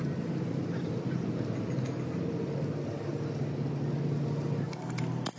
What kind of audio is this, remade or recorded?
recorded